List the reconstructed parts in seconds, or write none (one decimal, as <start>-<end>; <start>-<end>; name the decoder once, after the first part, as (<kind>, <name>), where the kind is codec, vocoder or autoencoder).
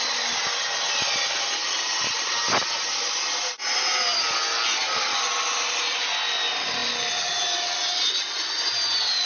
none